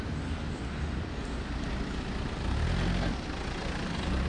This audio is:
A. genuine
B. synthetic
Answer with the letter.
A